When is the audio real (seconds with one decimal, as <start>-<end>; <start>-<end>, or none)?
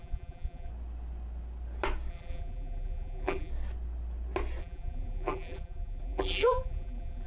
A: 0.7-2.1; 3.5-4.6